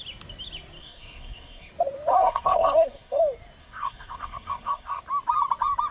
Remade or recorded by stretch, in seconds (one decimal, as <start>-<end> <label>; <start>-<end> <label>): 0.0-0.8 recorded; 0.8-1.7 remade; 1.7-2.1 recorded; 2.1-3.2 remade; 3.2-3.6 recorded; 3.6-5.0 remade; 5.0-5.9 recorded